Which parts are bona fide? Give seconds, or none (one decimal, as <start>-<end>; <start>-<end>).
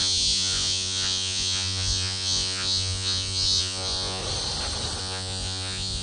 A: 4.2-5.0